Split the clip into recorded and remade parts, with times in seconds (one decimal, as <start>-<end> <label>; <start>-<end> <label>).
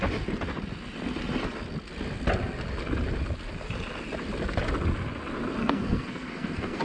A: 0.0-5.6 recorded; 5.6-6.8 remade